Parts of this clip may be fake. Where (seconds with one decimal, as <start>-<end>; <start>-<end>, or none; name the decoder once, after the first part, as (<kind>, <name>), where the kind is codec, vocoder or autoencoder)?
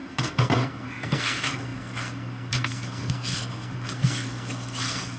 0.0-5.2 (codec, SNAC)